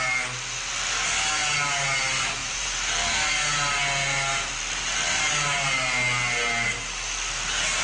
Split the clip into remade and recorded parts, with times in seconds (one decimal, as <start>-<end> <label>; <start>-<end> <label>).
0.0-2.4 recorded; 2.4-3.3 remade; 3.3-7.8 recorded